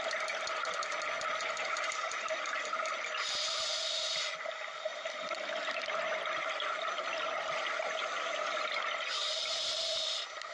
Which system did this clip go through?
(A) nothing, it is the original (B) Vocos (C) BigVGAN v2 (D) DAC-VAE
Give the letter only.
A